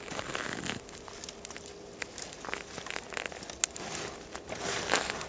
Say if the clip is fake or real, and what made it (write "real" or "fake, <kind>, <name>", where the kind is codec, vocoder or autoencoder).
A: real